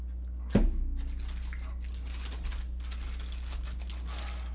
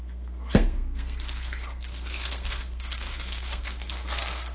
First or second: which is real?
first